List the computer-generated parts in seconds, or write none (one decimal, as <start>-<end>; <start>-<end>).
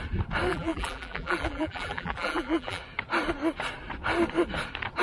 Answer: 0.5-2.8